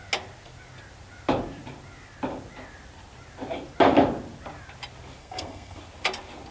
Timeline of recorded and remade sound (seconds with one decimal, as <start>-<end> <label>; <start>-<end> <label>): 0.0-5.2 recorded; 5.2-5.8 remade; 5.8-6.5 recorded